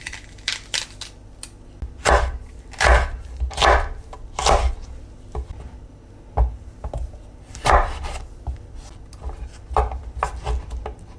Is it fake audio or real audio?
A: real